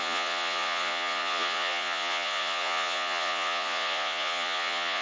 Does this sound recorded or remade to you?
remade